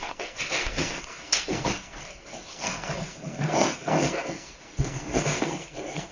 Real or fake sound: fake